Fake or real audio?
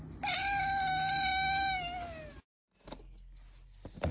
real